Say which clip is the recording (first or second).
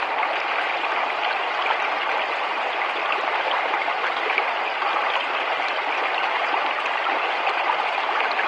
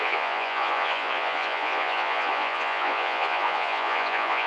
first